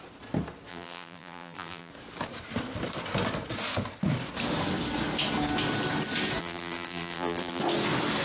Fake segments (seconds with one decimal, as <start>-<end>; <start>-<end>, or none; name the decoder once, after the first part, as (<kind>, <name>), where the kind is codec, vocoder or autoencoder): 0.7-1.9 (vocoder, BigVGAN v2); 6.4-7.6

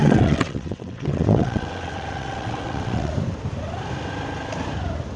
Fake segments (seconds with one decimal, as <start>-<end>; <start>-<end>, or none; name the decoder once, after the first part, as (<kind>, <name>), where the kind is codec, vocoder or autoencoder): 0.0-3.1 (vocoder, WaveNeXt)

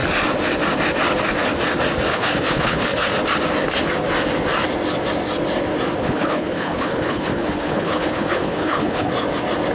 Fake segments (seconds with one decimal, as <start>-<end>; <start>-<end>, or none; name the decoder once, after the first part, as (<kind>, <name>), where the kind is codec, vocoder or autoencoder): 2.1-3.1 (codec, HILCodec); 6.0-9.1

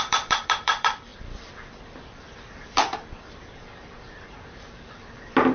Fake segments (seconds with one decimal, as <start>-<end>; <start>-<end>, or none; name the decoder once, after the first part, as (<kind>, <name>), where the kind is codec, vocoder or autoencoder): 0.0-5.5 (vocoder, BigVGAN v2)